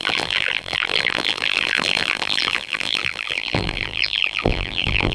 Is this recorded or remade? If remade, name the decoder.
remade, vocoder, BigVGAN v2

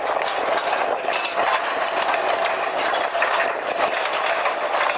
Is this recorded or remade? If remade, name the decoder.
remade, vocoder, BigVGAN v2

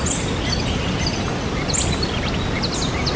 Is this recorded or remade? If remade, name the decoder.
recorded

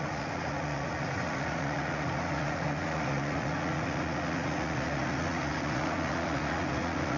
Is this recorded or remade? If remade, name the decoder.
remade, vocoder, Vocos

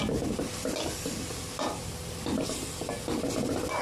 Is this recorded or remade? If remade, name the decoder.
recorded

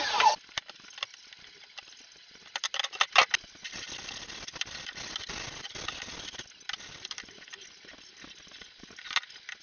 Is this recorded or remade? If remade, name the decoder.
recorded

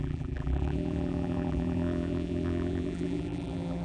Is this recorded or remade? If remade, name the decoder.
remade, vocoder, BigVGAN v2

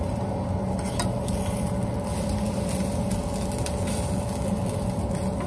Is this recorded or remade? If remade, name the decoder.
recorded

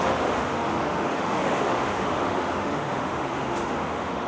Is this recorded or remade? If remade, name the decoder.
remade, autoencoder, DAC-VAE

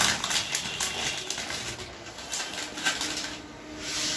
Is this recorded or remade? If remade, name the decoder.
recorded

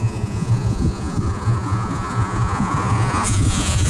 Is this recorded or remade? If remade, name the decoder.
remade, vocoder, Vocos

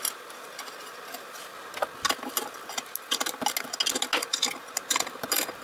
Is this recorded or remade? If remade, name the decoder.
recorded